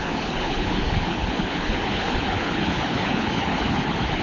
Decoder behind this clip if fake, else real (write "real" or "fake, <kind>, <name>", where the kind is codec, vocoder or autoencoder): fake, codec, HILCodec